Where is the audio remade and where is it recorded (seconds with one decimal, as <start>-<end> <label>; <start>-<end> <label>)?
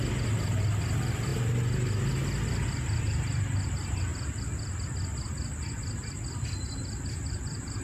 0.0-7.8 recorded